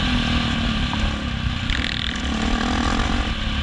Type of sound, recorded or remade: recorded